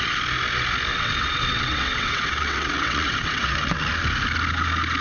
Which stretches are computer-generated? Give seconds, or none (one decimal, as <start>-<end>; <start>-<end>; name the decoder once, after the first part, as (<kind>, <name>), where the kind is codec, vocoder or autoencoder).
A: 0.9-3.9 (vocoder, WaveNeXt)